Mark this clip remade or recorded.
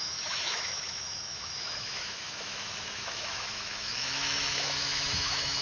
remade